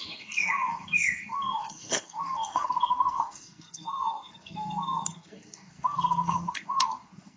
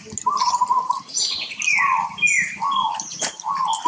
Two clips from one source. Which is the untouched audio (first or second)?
second